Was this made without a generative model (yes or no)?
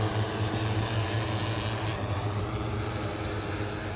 yes